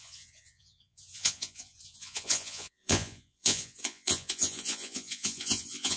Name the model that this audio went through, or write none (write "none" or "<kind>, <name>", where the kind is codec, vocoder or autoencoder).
vocoder, Vocos